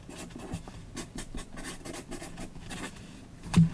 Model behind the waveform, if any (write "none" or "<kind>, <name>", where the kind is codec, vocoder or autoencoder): none